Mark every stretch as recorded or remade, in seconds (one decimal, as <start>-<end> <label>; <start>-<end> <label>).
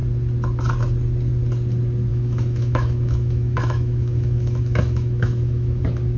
0.0-2.1 recorded; 2.1-5.8 remade; 5.8-6.2 recorded